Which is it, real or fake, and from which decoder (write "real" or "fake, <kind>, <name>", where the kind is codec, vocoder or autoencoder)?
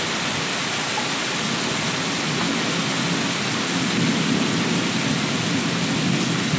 real